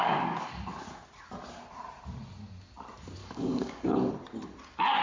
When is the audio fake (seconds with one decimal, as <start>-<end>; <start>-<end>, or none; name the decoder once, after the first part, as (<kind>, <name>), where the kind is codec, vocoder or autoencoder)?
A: 0.0-0.5 (codec, DAC); 3.2-4.1